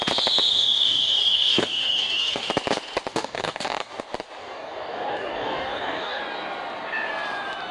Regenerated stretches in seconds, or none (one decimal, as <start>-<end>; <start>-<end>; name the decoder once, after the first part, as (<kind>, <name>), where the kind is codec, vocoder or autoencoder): 0.5-2.5 (codec, DAC); 3.1-4.0; 4.4-6.2